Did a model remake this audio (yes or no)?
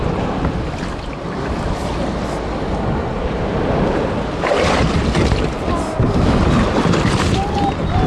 no